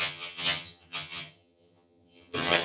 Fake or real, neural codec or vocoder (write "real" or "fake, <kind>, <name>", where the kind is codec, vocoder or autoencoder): fake, vocoder, HiFi-GAN